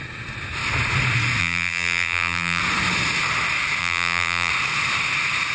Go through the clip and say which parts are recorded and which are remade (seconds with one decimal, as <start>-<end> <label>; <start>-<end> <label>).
0.0-1.4 recorded; 1.4-2.6 remade; 2.6-3.8 recorded; 3.8-4.5 remade; 4.5-5.5 recorded